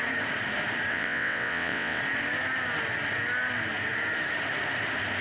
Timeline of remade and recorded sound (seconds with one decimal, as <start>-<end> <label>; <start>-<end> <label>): 0.0-0.9 recorded; 0.9-2.0 remade; 2.0-5.2 recorded